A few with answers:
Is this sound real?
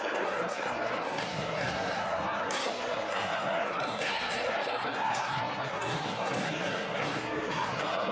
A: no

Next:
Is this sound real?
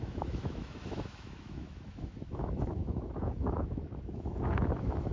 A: no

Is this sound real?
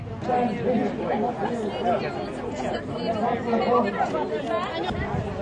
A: yes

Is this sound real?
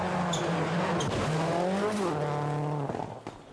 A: yes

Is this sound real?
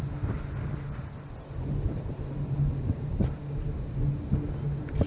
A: yes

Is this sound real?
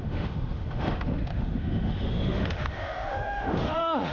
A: no